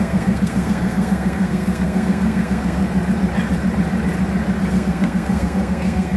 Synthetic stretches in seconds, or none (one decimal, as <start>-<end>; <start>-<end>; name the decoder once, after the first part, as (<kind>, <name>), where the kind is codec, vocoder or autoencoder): 0.0-2.8 (codec, SNAC); 4.7-6.2